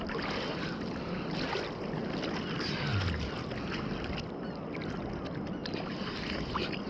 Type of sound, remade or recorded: recorded